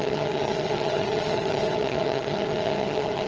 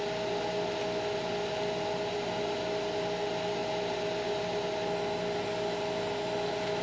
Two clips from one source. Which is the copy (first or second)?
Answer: first